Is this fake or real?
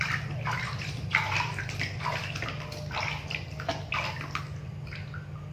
real